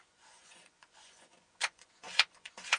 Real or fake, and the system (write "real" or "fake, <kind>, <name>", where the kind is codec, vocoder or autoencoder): fake, vocoder, Vocos